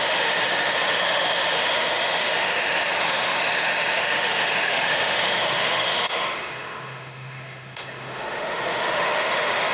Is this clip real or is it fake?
fake